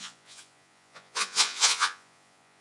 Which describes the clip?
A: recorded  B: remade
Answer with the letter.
B